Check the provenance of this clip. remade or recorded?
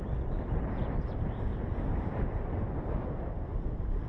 recorded